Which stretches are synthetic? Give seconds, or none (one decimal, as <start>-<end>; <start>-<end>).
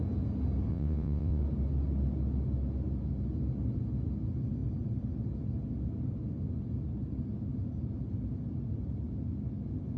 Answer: 0.7-1.4